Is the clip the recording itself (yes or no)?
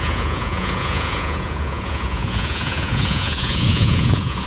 no